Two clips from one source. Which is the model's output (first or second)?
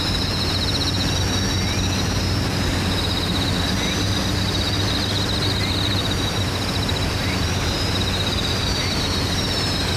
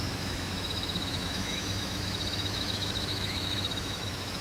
second